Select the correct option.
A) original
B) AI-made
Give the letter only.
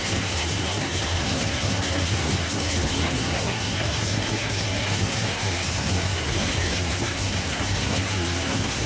B